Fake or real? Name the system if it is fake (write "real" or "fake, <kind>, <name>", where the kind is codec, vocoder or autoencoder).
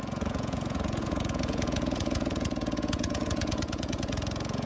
fake, vocoder, Vocos